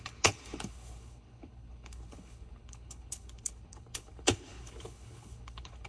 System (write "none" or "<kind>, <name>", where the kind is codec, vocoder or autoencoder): codec, HILCodec